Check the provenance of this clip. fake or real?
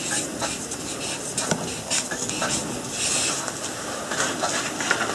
real